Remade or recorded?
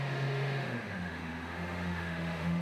remade